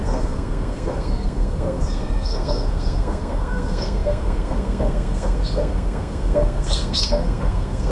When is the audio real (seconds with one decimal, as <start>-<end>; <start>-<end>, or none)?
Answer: none